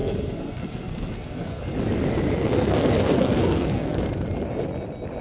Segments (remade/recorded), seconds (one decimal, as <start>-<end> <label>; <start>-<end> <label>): 0.0-1.6 remade; 1.6-2.4 recorded; 2.4-4.0 remade; 4.0-5.2 recorded